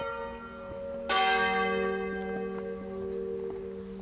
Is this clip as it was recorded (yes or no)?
yes